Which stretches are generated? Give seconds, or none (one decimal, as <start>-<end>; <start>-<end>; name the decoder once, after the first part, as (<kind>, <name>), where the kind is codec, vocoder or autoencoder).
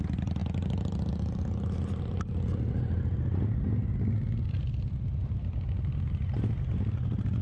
none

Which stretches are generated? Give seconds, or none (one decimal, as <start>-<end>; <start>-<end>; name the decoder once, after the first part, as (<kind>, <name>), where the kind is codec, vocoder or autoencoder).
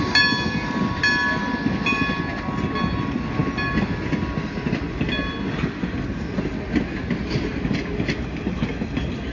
none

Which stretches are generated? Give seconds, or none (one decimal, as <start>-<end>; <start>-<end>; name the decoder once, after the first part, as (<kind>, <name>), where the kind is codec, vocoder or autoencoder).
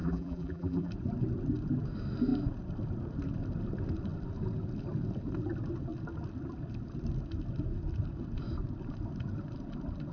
0.0-0.9 (vocoder, BigVGAN v2)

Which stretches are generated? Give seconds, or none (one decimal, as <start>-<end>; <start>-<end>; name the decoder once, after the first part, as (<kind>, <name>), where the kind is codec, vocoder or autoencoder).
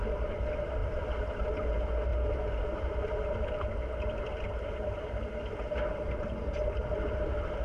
0.8-1.5 (vocoder, BigVGAN v2)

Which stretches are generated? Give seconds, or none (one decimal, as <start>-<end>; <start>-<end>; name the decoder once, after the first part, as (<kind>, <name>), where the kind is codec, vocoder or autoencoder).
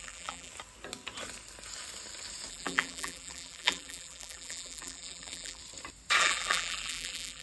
0.0-0.5 (vocoder, BigVGAN v2); 2.5-5.6; 6.2-7.4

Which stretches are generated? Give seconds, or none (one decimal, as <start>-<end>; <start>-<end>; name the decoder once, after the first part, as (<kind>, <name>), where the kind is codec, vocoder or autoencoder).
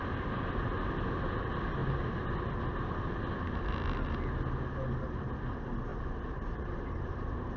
1.8-2.4 (vocoder, BigVGAN v2); 5.9-7.6